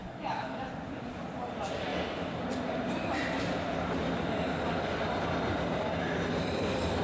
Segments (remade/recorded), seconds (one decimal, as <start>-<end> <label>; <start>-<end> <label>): 0.0-0.6 remade; 0.6-7.0 recorded